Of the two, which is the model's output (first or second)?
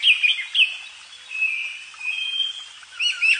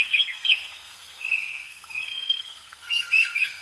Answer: second